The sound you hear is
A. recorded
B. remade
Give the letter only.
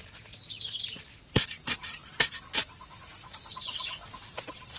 A